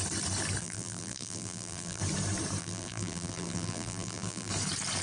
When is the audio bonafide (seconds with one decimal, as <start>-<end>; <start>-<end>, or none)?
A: 0.0-0.6; 2.0-2.6; 4.5-5.0